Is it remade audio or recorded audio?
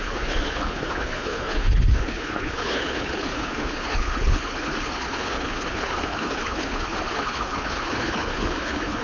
remade